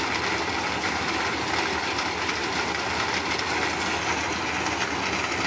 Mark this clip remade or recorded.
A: recorded